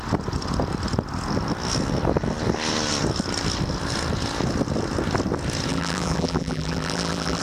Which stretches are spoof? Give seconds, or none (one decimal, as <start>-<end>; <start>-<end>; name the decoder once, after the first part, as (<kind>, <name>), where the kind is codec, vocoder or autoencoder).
5.7-7.4 (vocoder, BigVGAN v2)